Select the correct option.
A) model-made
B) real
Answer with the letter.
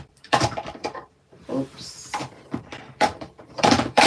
A